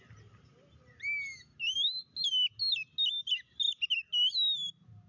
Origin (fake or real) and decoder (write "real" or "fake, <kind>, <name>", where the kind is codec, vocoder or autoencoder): real